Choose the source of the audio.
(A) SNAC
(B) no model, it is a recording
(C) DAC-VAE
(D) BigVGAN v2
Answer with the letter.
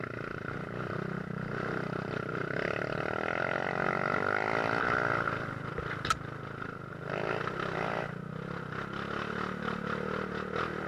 B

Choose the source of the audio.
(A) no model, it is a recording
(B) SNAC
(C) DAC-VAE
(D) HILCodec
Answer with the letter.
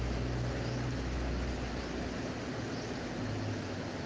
A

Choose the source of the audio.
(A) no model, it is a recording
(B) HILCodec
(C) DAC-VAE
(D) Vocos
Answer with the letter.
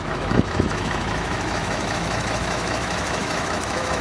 C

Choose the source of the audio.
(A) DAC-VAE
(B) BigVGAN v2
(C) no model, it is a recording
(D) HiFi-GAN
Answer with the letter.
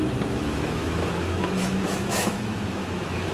A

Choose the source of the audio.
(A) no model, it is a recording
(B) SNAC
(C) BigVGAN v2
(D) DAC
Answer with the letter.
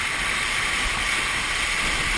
A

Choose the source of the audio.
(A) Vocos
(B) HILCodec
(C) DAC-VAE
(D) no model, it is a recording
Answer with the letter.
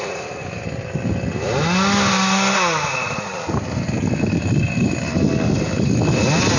D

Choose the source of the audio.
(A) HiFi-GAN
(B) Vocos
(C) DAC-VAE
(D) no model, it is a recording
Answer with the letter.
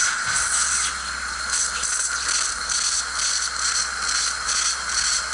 D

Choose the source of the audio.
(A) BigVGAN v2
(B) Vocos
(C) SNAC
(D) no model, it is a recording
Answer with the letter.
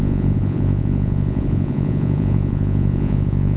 B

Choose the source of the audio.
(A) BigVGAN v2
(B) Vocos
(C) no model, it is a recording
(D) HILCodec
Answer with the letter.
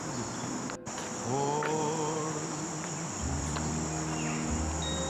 A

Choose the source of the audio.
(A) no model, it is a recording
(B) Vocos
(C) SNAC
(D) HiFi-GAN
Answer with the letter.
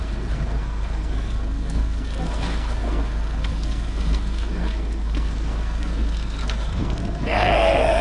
C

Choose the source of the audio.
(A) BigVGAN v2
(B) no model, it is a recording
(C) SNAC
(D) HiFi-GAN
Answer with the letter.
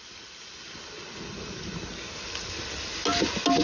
B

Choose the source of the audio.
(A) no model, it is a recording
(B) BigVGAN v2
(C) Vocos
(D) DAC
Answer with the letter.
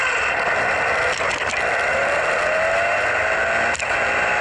A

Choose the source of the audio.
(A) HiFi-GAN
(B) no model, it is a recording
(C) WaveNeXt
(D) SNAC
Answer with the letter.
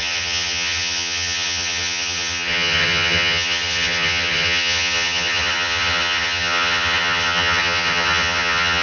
A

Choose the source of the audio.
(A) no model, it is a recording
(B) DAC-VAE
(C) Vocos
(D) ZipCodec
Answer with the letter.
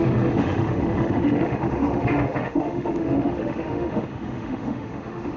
B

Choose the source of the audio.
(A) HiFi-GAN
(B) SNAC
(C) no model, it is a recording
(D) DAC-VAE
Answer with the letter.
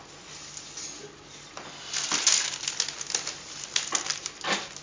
C